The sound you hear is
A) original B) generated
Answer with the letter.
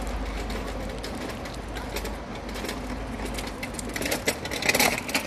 A